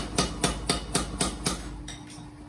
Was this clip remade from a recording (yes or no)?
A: no